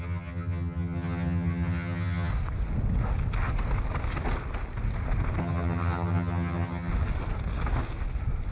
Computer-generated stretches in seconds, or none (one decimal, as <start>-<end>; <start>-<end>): 0.0-2.3; 5.4-6.9